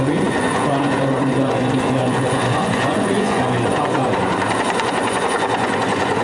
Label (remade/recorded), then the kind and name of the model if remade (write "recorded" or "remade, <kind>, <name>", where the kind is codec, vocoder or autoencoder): remade, vocoder, Vocos